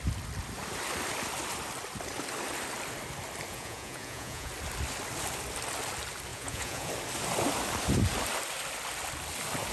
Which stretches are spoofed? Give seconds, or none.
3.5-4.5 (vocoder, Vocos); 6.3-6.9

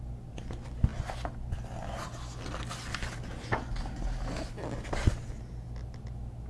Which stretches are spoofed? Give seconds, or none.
none

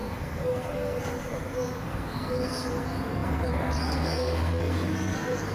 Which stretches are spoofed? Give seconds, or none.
0.0-5.5 (codec, SNAC)

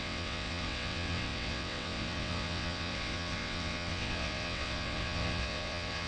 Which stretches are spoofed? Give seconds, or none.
0.0-6.1 (vocoder, WaveNeXt)

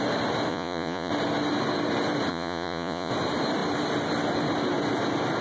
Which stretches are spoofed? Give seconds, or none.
0.5-1.1 (vocoder, Vocos); 2.3-3.1

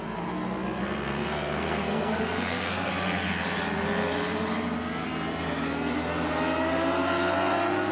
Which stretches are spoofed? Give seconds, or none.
0.8-2.9 (codec, SNAC)

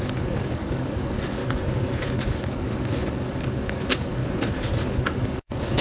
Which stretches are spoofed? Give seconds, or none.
0.0-1.4 (codec, DAC); 2.0-4.2; 5.0-5.8